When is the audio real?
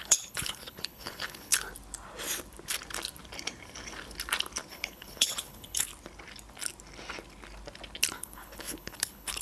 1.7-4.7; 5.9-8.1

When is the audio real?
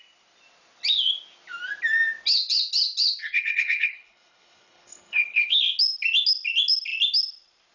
0.0-3.2; 5.6-7.7